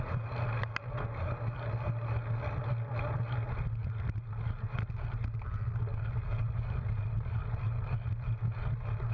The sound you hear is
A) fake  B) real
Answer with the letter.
B